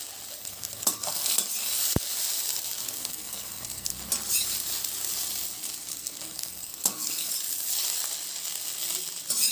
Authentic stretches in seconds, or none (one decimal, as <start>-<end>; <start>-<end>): 0.0-0.4; 1.4-2.8; 4.1-5.9; 7.3-9.5